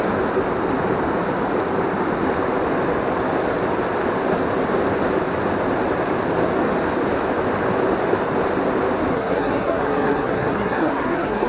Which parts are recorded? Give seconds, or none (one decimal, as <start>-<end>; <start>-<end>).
0.0-9.1